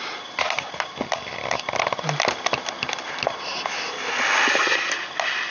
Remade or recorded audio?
recorded